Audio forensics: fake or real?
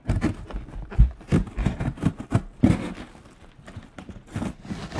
real